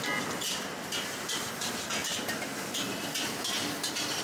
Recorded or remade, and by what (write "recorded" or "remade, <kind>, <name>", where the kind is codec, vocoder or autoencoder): remade, vocoder, BigVGAN v2